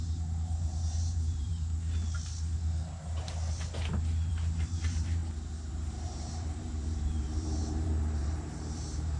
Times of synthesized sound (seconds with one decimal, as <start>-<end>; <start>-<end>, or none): 0.0-1.5; 4.3-5.2; 5.7-9.2